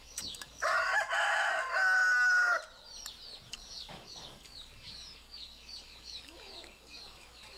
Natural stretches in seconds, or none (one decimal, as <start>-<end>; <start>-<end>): 0.9-3.5